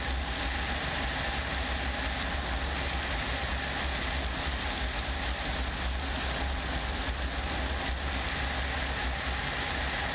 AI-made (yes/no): no